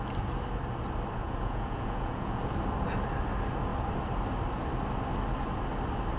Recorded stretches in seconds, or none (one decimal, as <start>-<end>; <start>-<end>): 0.0-1.2; 2.4-6.2